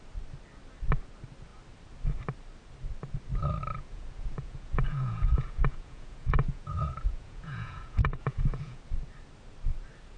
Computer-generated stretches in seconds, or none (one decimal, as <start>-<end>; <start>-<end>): 3.7-8.8